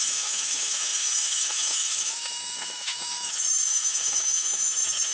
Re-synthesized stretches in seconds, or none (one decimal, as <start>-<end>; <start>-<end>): 0.0-5.1